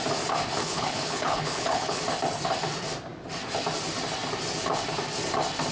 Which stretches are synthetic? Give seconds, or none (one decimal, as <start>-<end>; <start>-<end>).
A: 0.6-2.0